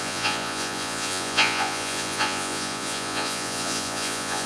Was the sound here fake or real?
fake